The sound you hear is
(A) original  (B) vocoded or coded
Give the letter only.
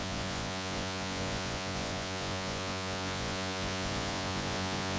B